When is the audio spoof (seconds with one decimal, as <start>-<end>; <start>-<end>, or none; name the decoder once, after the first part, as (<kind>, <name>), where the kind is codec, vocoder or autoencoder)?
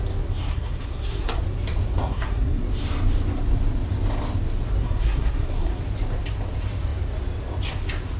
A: 0.5-1.4 (codec, SNAC); 2.0-2.6; 4.8-5.8